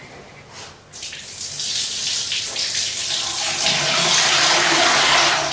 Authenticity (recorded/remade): recorded